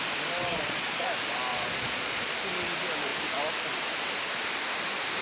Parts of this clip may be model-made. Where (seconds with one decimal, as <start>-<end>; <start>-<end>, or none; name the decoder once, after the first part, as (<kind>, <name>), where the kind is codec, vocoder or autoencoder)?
0.5-1.1 (vocoder, Vocos); 1.5-2.3